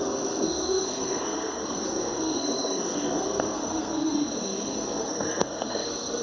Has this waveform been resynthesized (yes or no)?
yes